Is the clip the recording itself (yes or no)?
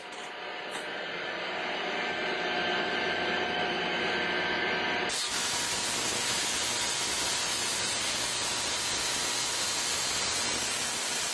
yes